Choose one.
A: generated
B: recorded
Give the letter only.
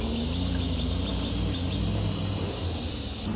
B